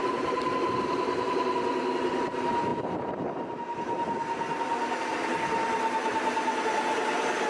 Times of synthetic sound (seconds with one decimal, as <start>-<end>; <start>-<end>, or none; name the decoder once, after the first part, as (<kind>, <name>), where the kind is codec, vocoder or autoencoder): 0.0-1.9 (vocoder, BigVGAN v2)